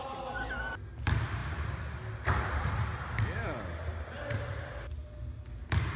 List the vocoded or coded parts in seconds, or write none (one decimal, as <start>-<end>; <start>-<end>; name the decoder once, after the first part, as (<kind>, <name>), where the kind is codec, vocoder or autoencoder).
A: none